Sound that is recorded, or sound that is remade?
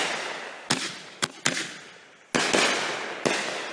recorded